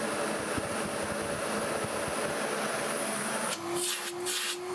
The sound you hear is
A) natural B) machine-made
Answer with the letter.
A